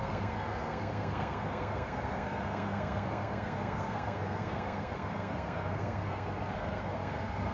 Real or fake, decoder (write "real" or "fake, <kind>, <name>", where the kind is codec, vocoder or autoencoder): fake, codec, SNAC